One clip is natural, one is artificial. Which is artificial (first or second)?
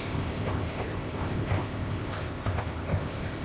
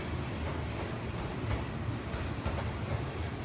first